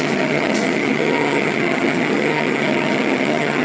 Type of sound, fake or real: fake